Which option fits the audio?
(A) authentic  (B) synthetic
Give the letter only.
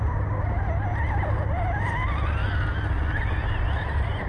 A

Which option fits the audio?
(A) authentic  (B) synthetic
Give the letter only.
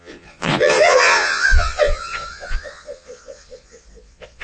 B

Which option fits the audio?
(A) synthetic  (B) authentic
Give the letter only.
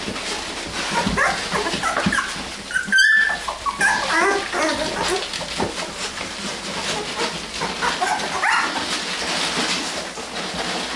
B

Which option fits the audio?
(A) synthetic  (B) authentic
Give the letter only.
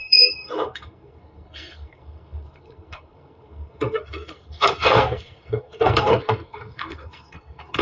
A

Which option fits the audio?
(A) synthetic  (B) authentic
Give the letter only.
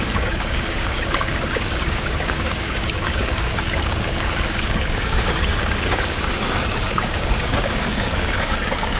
A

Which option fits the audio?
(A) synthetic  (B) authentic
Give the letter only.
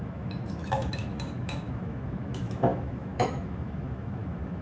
A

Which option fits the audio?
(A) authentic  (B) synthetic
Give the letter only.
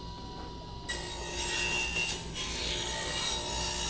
A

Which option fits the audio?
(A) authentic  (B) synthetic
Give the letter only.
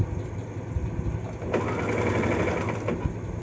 A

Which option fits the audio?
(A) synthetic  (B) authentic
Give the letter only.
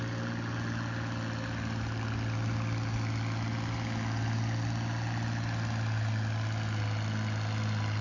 B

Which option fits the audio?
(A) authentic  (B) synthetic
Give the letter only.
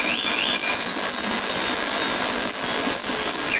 B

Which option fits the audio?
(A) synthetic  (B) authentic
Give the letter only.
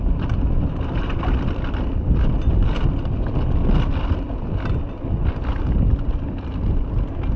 B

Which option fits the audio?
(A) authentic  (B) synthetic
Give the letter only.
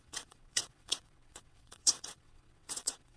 B